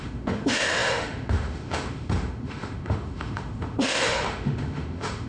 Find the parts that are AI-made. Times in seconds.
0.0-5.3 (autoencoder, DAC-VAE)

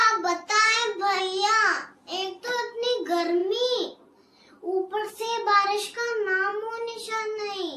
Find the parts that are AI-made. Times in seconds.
none